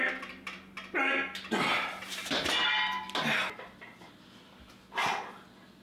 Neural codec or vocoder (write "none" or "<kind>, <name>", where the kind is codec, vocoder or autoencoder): none